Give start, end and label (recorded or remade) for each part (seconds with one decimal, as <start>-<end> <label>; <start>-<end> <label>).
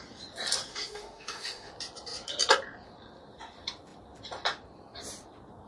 0.0-0.7 recorded; 0.7-1.7 remade; 1.7-5.7 recorded